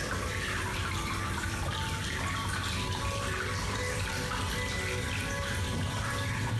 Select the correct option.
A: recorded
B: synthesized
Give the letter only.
A